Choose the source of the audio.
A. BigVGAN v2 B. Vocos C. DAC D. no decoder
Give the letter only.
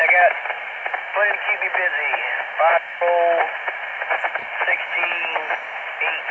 D